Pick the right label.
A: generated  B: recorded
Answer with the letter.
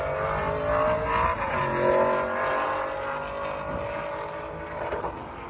B